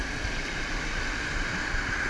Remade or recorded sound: recorded